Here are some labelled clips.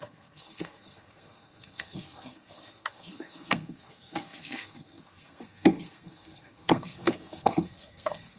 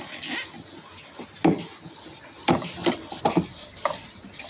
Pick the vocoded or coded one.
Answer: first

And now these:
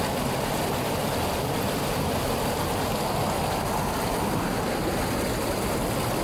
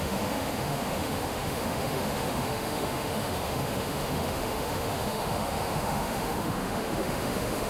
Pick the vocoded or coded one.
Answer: second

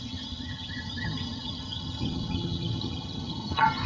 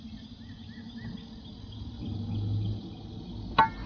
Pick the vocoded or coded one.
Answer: first